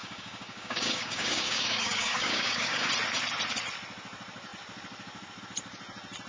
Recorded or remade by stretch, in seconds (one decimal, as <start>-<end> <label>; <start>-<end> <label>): 0.0-2.9 remade; 2.9-6.3 recorded